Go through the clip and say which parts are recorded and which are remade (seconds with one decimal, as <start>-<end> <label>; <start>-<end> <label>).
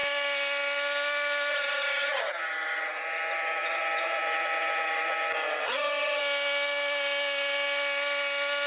0.0-1.5 recorded; 1.5-6.2 remade; 6.2-8.7 recorded